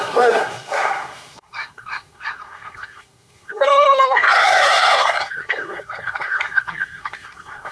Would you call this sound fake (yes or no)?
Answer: yes